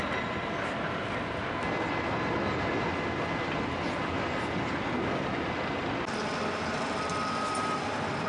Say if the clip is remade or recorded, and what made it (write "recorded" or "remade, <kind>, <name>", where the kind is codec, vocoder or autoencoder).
recorded